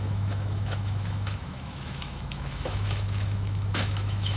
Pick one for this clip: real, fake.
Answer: fake